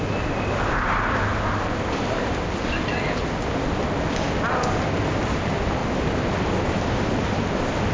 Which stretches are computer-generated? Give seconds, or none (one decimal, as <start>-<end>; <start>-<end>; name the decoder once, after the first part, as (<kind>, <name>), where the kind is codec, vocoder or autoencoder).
none